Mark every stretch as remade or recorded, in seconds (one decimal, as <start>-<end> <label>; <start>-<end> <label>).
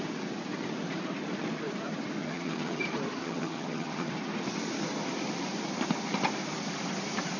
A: 0.0-2.2 recorded; 2.2-2.8 remade; 2.8-3.2 recorded; 3.2-4.1 remade; 4.1-7.4 recorded